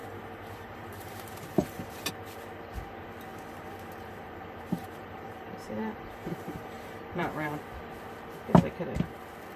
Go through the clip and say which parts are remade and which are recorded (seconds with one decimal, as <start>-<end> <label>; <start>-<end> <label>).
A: 0.0-2.1 remade; 2.1-3.3 recorded; 3.3-7.6 remade; 7.6-9.6 recorded